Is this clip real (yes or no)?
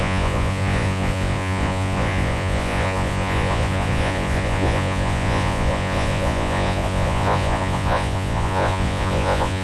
no